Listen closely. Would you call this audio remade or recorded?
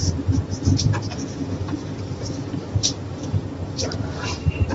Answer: remade